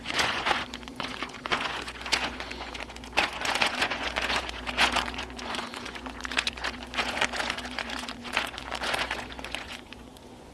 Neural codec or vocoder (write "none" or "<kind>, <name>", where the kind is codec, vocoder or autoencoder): vocoder, Vocos